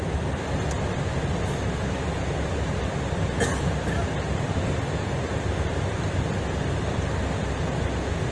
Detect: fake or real real